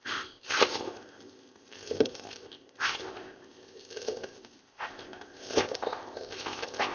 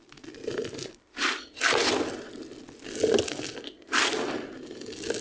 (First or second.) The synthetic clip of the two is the first